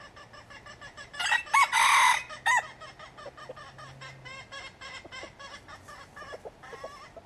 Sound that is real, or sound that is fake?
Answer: real